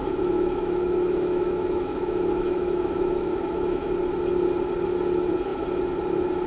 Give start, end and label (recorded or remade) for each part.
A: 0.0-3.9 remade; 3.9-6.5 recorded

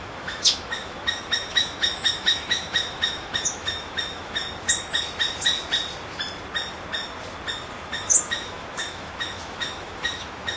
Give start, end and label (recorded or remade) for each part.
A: 0.0-4.4 remade; 4.4-7.8 recorded; 7.8-10.6 remade

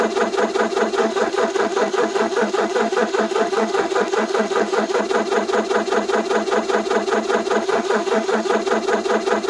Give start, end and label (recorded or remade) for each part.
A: 0.0-1.0 recorded; 1.0-5.0 remade; 5.0-7.6 recorded; 7.6-8.5 remade; 8.5-9.5 recorded

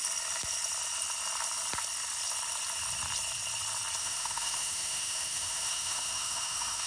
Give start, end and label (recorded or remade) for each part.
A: 0.0-4.0 recorded; 4.0-6.9 remade